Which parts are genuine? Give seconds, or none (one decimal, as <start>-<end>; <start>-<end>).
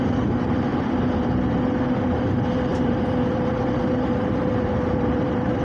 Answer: 0.7-1.8